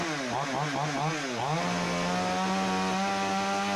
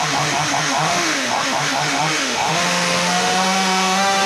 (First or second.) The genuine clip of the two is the first